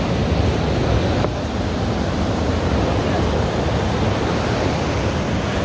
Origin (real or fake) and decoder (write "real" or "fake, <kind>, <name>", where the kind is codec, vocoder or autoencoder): real